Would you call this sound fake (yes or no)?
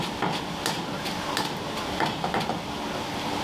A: no